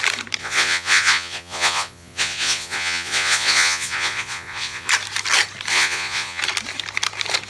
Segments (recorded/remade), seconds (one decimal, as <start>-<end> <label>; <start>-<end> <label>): 0.0-0.4 recorded; 0.4-4.9 remade; 4.9-5.7 recorded; 5.7-6.4 remade; 6.4-7.5 recorded